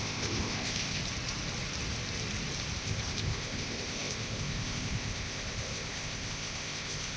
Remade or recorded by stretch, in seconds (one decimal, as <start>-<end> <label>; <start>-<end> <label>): 0.0-1.0 remade; 1.0-2.8 recorded; 2.8-7.2 remade

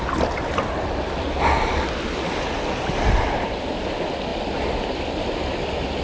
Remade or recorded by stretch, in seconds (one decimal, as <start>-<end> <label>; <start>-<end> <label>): 0.0-6.0 recorded

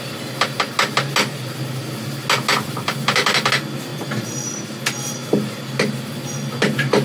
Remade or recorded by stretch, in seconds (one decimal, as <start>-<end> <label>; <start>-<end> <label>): 0.0-2.5 recorded; 2.5-3.5 remade; 3.5-3.9 recorded; 3.9-4.8 remade; 4.8-7.0 recorded

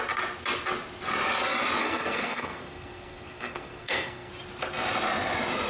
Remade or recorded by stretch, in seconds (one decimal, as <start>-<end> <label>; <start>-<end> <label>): 0.0-1.8 recorded; 1.8-4.3 remade; 4.3-5.7 recorded

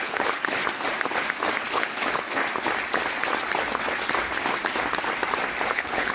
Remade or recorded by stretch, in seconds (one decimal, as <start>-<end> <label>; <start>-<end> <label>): 0.0-0.6 remade; 0.6-1.7 recorded; 1.7-2.4 remade; 2.4-5.6 recorded; 5.6-6.1 remade